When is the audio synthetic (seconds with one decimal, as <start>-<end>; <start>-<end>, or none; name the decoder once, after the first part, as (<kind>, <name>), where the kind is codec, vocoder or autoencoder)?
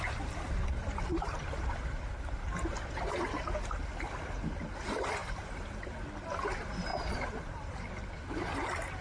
5.2-5.8 (vocoder, BigVGAN v2); 6.9-7.9